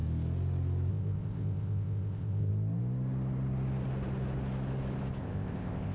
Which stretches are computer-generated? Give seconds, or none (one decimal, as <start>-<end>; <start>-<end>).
0.9-2.5; 5.2-5.9